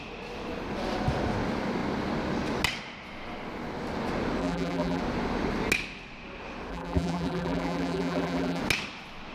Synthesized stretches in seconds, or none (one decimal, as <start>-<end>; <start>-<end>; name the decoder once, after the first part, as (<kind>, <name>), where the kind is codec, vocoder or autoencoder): 4.4-5.0 (vocoder, BigVGAN v2); 6.7-8.6